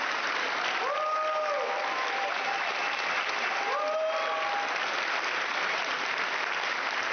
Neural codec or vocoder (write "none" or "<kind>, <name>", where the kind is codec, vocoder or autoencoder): none